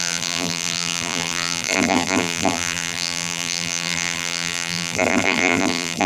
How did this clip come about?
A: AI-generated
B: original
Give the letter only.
A